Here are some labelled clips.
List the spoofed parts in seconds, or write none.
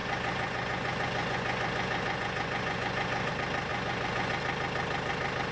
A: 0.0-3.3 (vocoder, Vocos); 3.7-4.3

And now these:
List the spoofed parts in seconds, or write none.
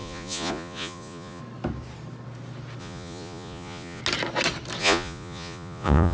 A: 0.0-1.4 (vocoder, Vocos); 2.8-4.0; 4.8-6.1